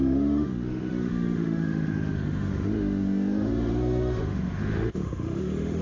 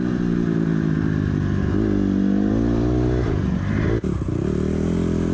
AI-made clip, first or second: first